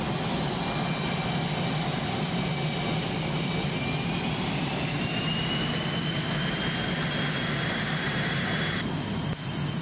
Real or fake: real